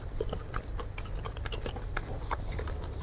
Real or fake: fake